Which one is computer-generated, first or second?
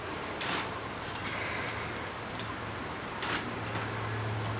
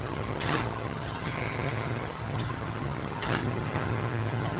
second